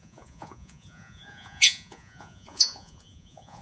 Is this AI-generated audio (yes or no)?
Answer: yes